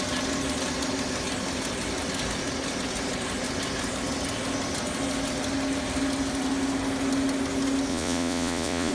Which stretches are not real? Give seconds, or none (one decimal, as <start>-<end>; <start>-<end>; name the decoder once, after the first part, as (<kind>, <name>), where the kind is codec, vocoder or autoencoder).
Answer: 7.9-8.9 (vocoder, Vocos)